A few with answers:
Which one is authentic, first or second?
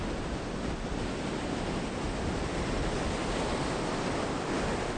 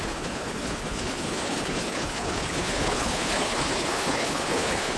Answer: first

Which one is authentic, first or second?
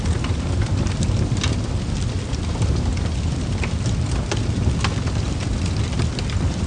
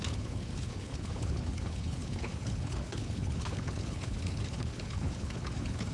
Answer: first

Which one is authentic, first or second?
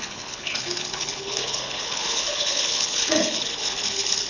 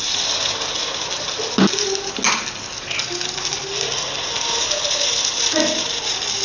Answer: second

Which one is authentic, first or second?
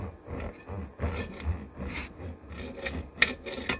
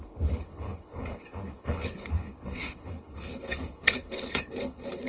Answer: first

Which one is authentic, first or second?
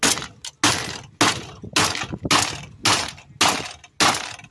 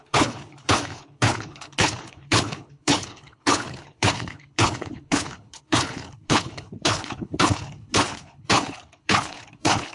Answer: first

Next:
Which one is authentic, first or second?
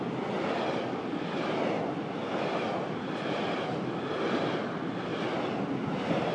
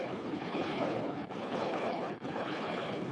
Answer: first